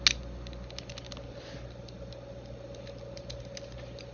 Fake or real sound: real